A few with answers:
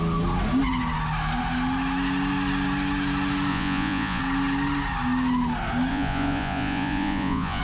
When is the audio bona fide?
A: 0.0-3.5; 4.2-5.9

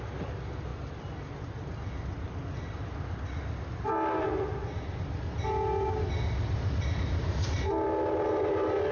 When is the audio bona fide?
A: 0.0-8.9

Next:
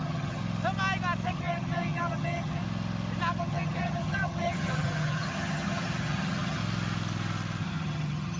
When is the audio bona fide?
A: 0.4-1.3; 2.6-3.4; 6.6-7.6

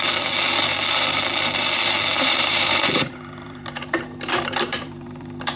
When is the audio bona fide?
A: 0.0-2.1